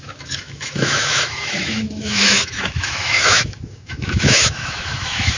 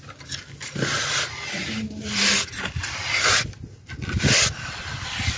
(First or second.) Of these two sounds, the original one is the second